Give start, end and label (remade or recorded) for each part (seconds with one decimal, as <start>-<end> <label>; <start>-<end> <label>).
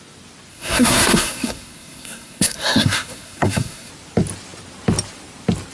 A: 0.0-0.5 recorded; 0.5-3.9 remade; 3.9-5.7 recorded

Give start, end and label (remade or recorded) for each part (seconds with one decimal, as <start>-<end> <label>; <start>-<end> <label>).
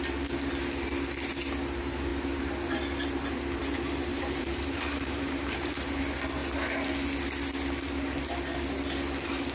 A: 0.0-4.1 recorded; 4.1-6.0 remade; 6.0-9.5 recorded